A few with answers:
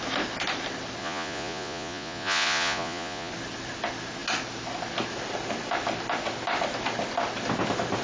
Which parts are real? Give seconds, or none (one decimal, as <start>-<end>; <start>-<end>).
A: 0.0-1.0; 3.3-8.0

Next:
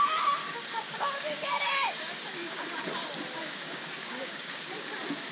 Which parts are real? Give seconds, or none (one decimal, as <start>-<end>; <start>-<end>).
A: 0.0-0.4; 2.8-3.4; 4.6-5.3

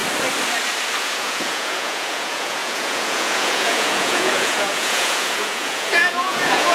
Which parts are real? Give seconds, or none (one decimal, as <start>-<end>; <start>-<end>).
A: 0.0-1.0